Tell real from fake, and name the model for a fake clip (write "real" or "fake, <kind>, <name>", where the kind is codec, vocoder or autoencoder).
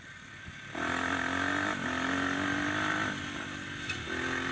real